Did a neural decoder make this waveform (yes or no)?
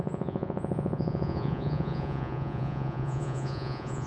yes